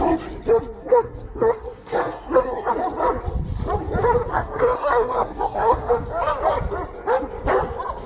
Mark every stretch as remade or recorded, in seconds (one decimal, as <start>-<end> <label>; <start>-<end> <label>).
0.0-0.8 recorded; 0.8-2.7 remade; 2.7-4.3 recorded; 4.3-5.9 remade; 5.9-8.1 recorded